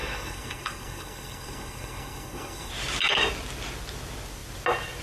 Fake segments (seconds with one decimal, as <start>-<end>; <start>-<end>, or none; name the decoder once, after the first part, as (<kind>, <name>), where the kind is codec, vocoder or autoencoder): 0.0-2.7 (codec, SNAC)